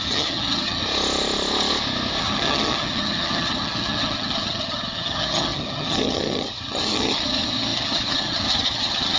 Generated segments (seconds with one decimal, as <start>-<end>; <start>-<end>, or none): 0.0-0.8; 2.2-9.2